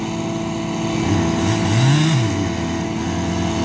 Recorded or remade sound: recorded